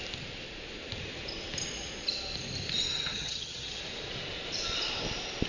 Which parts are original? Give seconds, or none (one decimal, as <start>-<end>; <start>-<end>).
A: 0.0-3.0; 3.8-5.5